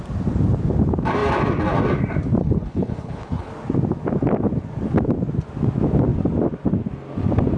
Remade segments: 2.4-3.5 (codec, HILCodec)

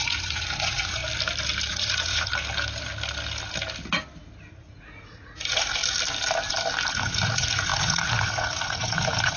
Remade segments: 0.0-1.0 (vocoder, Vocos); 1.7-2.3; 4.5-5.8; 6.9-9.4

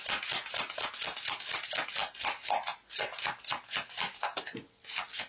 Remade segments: none

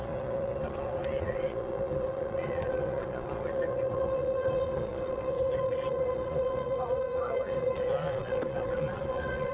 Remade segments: 0.0-9.5 (vocoder, Vocos)

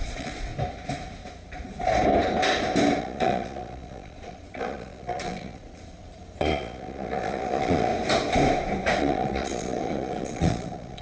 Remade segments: 0.0-0.5 (vocoder, Vocos); 3.0-7.9; 9.0-11.0

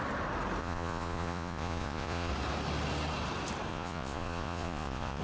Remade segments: 0.6-2.3 (vocoder, Vocos); 3.7-5.2

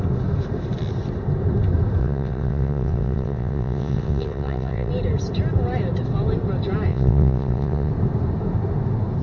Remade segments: 2.0-4.9 (vocoder, WaveNeXt); 6.9-7.9